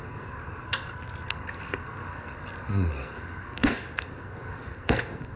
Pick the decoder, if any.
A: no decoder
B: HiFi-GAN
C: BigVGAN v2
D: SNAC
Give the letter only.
D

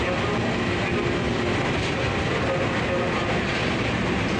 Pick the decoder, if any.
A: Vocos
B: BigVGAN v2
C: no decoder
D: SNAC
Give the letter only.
C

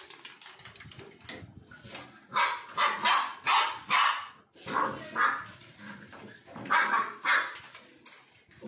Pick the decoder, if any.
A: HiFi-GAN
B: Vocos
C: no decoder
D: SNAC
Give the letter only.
C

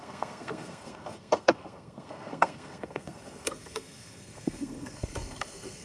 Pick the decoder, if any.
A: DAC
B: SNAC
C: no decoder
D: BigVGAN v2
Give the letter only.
B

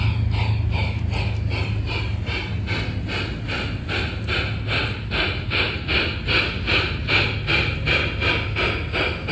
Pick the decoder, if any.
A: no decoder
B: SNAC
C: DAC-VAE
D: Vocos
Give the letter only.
A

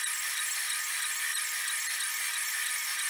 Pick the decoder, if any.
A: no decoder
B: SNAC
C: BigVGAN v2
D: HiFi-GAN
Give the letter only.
A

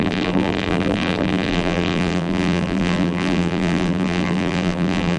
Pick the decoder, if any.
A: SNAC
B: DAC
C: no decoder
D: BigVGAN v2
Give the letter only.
D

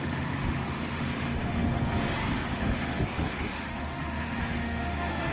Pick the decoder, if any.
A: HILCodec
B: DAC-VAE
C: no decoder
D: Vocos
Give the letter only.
B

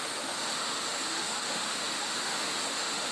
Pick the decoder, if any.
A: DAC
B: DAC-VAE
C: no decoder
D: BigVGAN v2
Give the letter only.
B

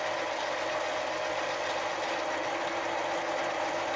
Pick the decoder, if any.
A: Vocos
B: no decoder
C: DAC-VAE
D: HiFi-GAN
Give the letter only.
B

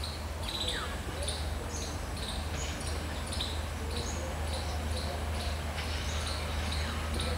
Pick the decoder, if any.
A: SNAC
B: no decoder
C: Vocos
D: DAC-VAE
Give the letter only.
B